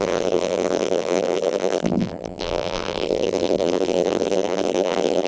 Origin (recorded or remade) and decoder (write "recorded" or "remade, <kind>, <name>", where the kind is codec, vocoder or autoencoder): remade, vocoder, BigVGAN v2